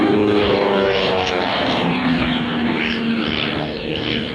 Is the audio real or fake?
fake